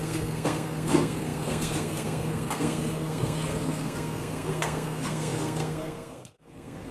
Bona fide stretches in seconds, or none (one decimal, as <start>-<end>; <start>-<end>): none